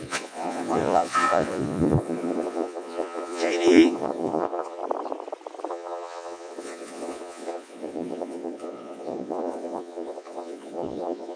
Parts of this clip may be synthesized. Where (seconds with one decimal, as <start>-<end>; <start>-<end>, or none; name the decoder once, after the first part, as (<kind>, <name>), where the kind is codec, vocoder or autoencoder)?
0.0-4.8 (vocoder, Vocos); 5.7-11.4